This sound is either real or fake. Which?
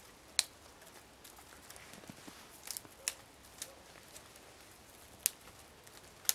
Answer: real